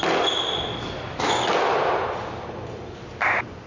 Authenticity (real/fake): real